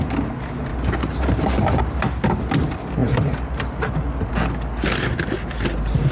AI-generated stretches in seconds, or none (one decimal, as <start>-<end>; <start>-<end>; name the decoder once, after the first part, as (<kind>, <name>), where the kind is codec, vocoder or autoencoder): 0.7-1.8 (vocoder, BigVGAN v2); 3.0-4.3